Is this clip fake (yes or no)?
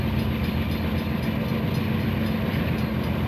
no